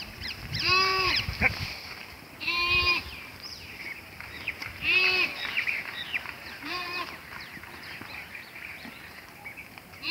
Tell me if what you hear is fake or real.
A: fake